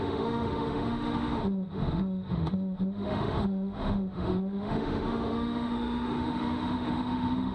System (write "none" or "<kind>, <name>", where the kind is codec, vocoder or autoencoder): autoencoder, DAC-VAE